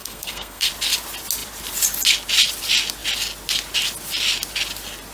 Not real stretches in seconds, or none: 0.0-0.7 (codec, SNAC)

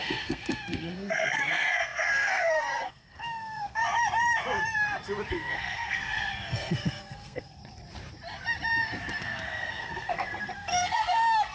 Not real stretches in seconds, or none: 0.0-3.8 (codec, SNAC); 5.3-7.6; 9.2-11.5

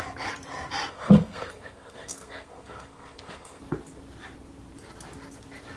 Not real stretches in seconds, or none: 0.9-3.6 (codec, SNAC)